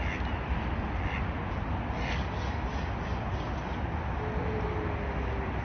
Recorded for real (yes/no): yes